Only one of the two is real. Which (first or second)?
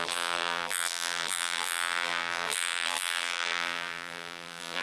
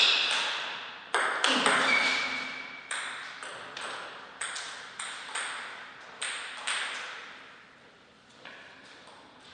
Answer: second